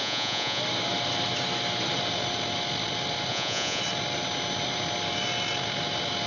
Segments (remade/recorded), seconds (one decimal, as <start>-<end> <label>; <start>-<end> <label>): 0.0-0.6 remade; 0.6-3.3 recorded; 3.3-3.8 remade; 3.8-6.3 recorded